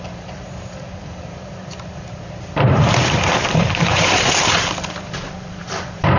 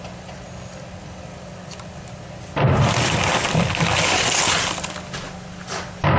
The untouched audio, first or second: second